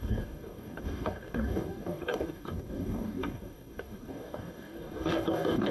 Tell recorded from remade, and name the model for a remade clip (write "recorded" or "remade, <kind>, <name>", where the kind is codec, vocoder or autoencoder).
remade, codec, DAC